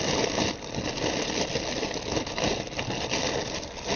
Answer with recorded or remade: recorded